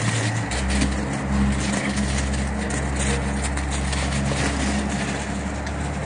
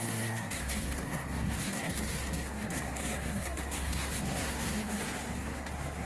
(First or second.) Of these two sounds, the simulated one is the second